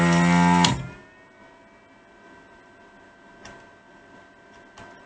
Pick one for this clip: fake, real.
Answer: real